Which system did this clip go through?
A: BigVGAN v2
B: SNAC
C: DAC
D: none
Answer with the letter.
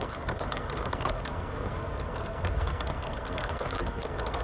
B